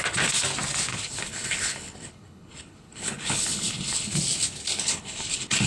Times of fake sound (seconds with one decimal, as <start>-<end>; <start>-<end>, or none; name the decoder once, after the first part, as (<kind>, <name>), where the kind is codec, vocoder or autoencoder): 0.9-4.1 (codec, HILCodec); 4.7-5.7